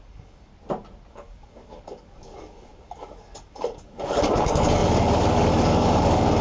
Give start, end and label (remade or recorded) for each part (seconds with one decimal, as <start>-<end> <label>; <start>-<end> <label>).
0.0-0.5 remade; 0.5-1.1 recorded; 1.1-6.4 remade